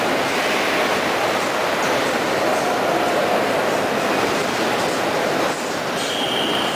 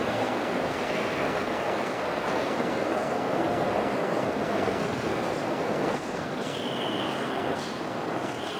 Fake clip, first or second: second